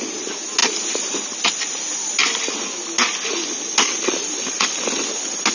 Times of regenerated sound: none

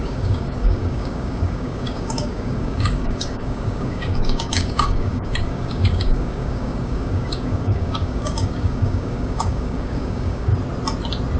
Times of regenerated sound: 0.0-10.5

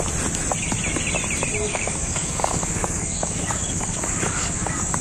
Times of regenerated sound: 1.7-5.0

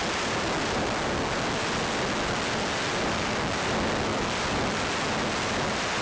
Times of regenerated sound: none

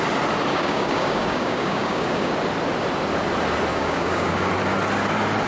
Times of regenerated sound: 0.5-2.3; 3.7-4.5

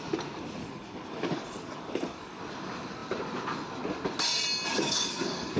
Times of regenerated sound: 0.6-2.4; 4.7-5.6